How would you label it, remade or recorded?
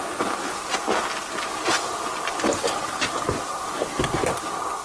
recorded